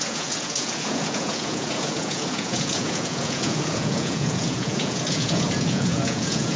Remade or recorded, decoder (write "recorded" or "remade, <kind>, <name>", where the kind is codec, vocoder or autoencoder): remade, vocoder, Vocos